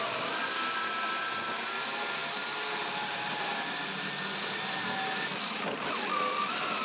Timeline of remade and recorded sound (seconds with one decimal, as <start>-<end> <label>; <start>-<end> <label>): 0.0-6.8 recorded